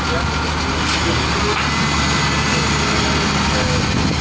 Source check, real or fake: real